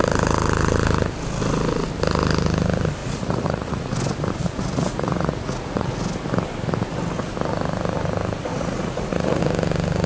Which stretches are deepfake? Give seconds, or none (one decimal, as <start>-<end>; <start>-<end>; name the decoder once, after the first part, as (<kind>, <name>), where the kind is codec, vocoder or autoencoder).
3.0-3.9 (vocoder, Vocos); 4.4-5.9; 8.5-9.4